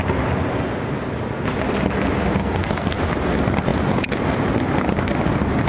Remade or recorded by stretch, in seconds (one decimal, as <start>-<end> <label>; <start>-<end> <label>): 0.0-2.4 recorded; 2.4-3.0 remade; 3.0-5.7 recorded